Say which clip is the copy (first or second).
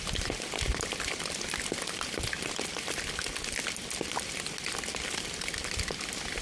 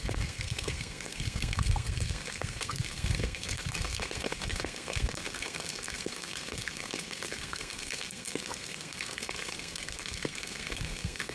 second